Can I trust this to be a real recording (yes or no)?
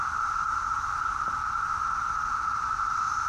yes